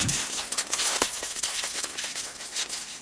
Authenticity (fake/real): fake